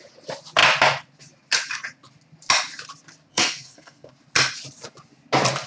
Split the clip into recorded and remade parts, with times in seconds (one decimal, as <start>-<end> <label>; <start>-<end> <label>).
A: 0.0-3.3 recorded; 3.3-4.1 remade; 4.1-5.7 recorded